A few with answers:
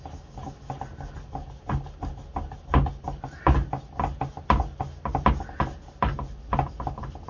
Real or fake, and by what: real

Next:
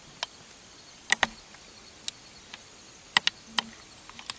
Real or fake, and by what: real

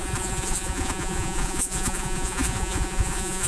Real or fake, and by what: fake, vocoder, Vocos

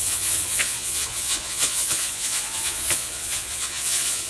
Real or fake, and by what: fake, vocoder, Vocos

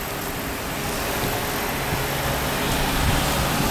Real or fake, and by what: real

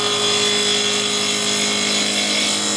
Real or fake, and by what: real